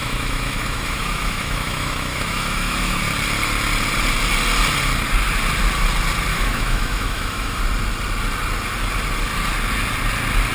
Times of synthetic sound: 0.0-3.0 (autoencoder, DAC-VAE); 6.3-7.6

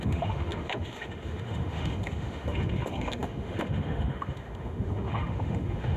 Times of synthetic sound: 0.0-6.0 (autoencoder, DAC-VAE)

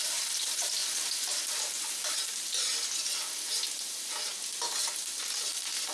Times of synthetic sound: none

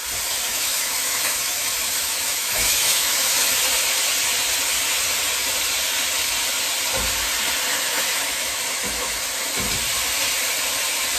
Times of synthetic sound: 0.5-3.6 (autoencoder, DAC-VAE); 7.7-9.2